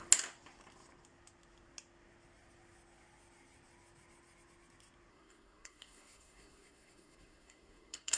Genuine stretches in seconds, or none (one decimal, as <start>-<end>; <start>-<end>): 0.0-5.1